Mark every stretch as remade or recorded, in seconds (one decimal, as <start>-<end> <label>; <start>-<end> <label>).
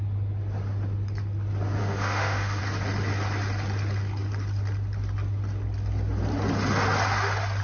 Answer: 0.0-1.8 recorded; 1.8-2.6 remade; 2.6-7.6 recorded